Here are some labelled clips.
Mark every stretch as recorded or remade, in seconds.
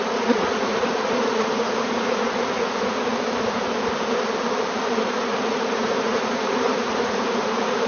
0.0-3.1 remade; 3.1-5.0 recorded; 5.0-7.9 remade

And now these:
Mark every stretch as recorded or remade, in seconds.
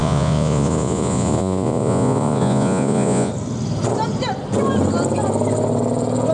0.0-3.3 remade; 3.3-6.3 recorded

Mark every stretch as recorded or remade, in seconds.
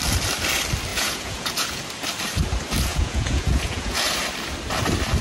0.0-0.9 recorded; 0.9-1.8 remade; 1.8-2.9 recorded; 2.9-4.0 remade; 4.0-5.2 recorded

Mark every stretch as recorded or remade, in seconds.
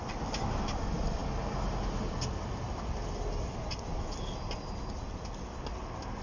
0.0-6.2 recorded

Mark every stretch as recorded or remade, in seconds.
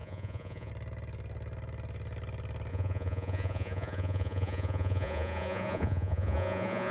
0.0-0.7 remade; 0.7-2.7 recorded; 2.7-6.9 remade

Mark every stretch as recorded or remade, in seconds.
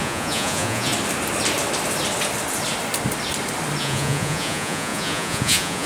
0.0-0.9 remade; 0.9-3.8 recorded; 3.8-5.9 remade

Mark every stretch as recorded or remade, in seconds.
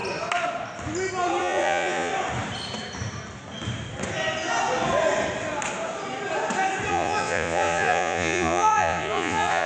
0.0-1.4 recorded; 1.4-2.1 remade; 2.1-6.9 recorded; 6.9-9.7 remade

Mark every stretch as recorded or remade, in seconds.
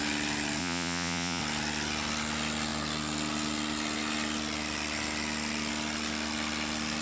0.0-0.6 recorded; 0.6-1.4 remade; 1.4-7.0 recorded